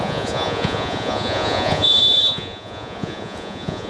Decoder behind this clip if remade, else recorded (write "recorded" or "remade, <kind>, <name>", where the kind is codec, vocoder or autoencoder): remade, vocoder, Vocos